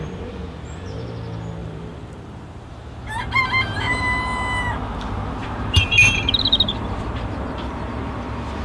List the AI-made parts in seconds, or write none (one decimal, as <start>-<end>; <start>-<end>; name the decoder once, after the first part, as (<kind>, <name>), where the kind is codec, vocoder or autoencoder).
1.6-4.0 (vocoder, BigVGAN v2); 5.4-7.6